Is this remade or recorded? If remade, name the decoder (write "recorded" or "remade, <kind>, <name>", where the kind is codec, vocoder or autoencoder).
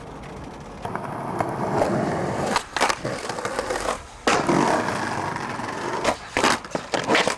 recorded